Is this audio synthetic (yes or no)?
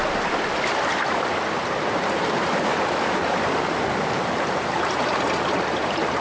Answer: no